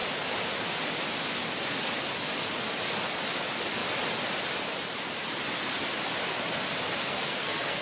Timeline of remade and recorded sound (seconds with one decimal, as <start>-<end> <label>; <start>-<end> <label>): 0.0-7.0 recorded; 7.0-7.8 remade